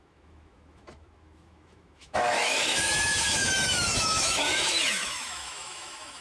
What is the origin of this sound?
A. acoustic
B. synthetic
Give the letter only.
B